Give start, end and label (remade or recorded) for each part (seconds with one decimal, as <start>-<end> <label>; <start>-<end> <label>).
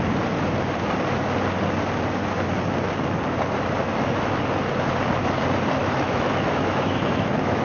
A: 0.0-5.8 recorded; 5.8-7.6 remade